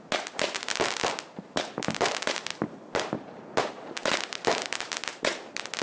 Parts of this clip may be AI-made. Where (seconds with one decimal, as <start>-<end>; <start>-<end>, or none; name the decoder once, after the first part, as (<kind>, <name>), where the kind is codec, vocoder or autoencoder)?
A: none